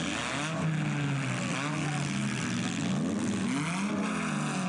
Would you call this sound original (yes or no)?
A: yes